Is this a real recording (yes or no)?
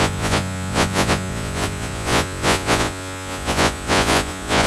no